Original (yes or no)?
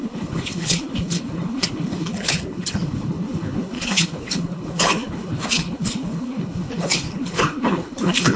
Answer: no